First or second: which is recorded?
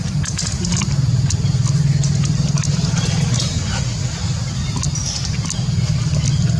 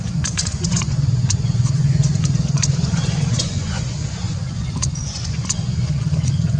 first